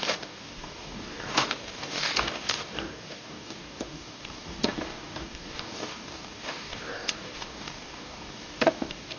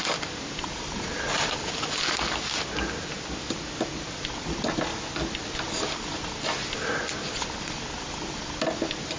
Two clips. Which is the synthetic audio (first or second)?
first